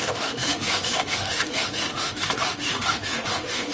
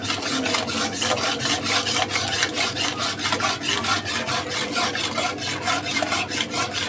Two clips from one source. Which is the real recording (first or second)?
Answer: second